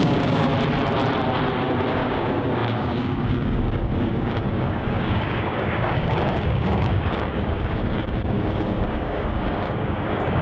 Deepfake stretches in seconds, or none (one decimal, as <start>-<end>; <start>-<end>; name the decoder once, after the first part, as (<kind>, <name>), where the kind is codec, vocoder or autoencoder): 0.0-0.5 (codec, DAC); 1.9-10.4